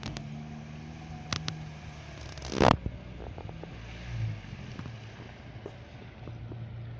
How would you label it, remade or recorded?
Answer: recorded